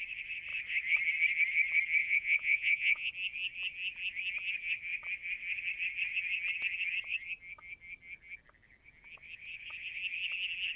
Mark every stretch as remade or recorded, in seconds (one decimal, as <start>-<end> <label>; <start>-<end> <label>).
0.0-2.0 recorded; 2.0-3.1 remade; 3.1-10.8 recorded